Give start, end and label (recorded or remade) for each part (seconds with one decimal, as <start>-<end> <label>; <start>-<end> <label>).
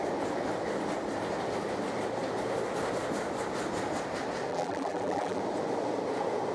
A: 0.0-4.5 recorded; 4.5-5.4 remade; 5.4-6.5 recorded